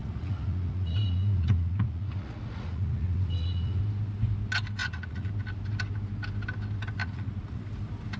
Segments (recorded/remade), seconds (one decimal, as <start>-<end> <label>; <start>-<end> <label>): 0.0-3.8 remade; 3.8-4.8 recorded; 4.8-5.3 remade; 5.3-7.0 recorded; 7.0-7.6 remade; 7.6-8.2 recorded